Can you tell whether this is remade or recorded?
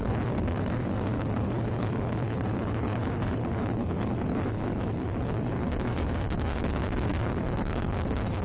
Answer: remade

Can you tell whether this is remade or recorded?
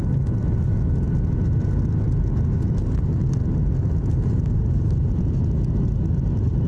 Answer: recorded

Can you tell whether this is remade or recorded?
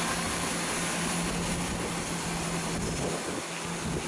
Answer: recorded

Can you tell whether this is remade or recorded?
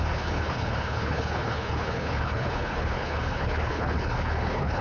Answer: remade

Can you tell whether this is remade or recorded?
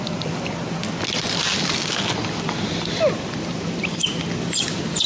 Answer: recorded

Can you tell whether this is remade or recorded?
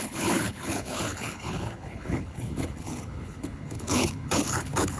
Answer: remade